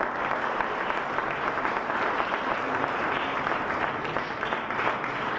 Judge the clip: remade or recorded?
recorded